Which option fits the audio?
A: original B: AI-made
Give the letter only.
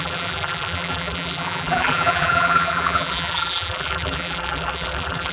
B